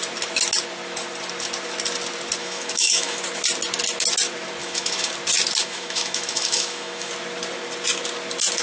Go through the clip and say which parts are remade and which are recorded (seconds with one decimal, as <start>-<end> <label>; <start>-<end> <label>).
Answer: 0.0-2.4 recorded; 2.4-3.2 remade; 3.2-4.6 recorded; 4.6-5.1 remade; 5.1-5.6 recorded; 5.6-7.1 remade; 7.1-8.6 recorded